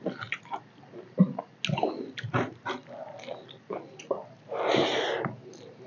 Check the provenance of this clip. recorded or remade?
recorded